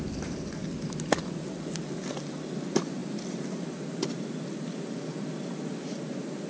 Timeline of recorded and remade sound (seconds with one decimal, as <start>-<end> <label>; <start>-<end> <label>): 0.0-6.5 recorded